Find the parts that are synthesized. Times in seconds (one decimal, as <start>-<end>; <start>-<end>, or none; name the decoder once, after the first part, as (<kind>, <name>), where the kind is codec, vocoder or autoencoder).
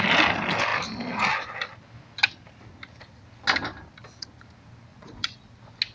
4.9-5.4 (vocoder, Vocos)